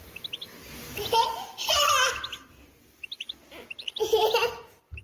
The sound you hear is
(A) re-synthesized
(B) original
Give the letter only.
B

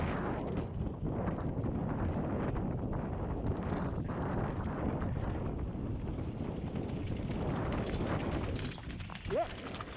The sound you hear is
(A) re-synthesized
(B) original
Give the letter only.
B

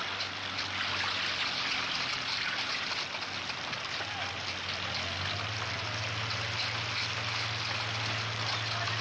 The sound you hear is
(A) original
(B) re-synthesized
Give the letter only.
A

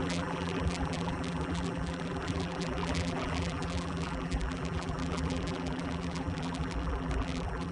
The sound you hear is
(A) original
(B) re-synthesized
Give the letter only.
B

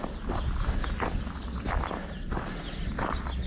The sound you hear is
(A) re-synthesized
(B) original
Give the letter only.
B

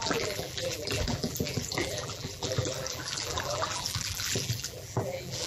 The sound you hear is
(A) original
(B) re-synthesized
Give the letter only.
B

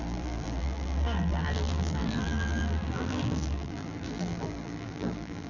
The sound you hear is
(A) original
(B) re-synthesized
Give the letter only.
B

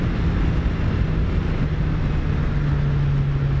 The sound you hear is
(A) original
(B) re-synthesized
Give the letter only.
A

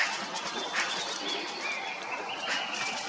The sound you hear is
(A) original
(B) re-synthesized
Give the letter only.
A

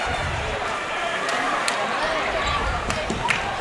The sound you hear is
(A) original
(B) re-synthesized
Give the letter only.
B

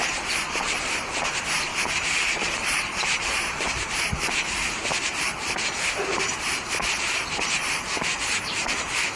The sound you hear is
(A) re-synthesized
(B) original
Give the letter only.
A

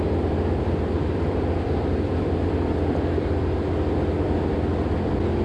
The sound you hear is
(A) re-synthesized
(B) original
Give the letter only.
A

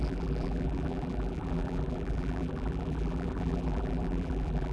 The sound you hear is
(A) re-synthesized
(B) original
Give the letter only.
A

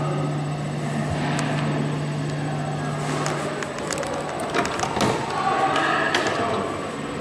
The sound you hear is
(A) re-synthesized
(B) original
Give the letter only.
B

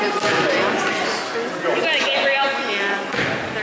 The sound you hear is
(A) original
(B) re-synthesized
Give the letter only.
A